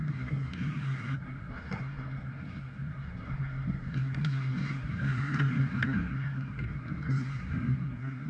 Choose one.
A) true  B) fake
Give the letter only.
B